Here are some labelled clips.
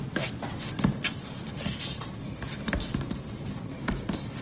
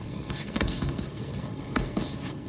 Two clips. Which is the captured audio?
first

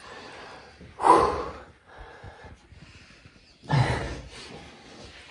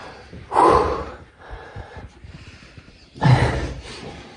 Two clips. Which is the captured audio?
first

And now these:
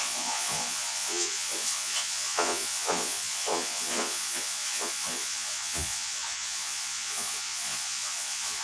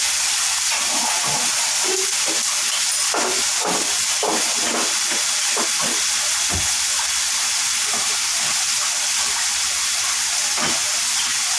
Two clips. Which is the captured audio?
second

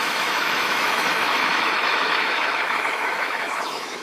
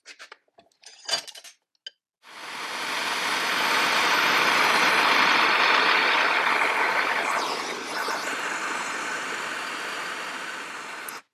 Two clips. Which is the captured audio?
second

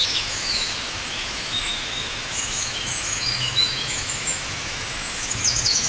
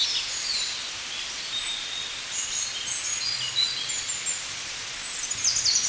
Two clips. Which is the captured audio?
second